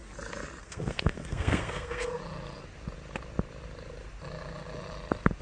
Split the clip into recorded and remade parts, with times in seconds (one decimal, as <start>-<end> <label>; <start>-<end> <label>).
0.0-0.6 recorded; 0.6-2.2 remade; 2.2-5.4 recorded